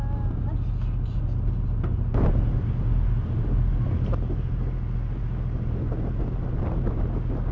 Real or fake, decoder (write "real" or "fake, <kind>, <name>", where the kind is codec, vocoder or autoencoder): real